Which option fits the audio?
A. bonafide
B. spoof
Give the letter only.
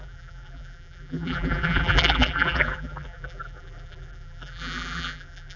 B